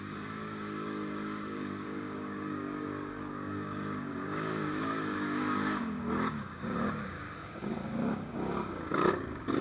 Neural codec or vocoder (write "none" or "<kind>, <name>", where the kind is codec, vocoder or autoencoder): codec, DAC